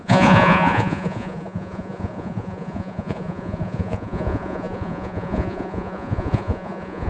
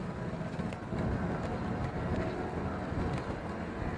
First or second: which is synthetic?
first